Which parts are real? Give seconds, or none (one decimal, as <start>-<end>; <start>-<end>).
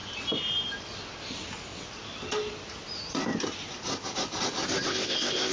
0.0-4.9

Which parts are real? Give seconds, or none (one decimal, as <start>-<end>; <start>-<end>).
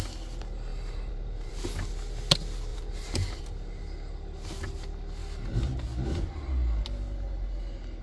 0.0-0.7; 1.5-2.7; 3.4-8.0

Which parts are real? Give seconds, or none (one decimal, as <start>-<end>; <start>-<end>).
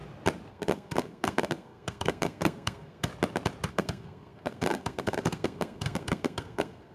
0.0-0.5; 3.1-3.7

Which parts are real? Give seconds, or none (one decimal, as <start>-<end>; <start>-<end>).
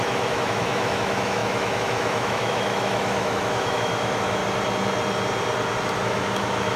4.4-6.0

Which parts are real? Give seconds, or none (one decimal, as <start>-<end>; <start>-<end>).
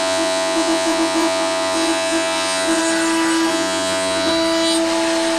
2.8-3.5; 4.3-5.4